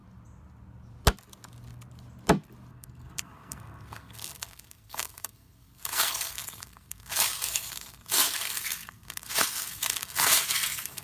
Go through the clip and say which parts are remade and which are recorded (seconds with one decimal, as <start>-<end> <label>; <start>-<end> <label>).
0.0-2.7 recorded; 2.7-11.0 remade